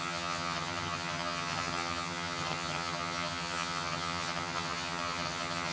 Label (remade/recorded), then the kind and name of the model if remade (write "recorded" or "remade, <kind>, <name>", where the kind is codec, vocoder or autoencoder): remade, vocoder, HiFi-GAN